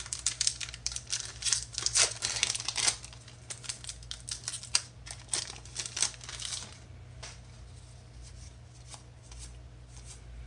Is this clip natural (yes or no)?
yes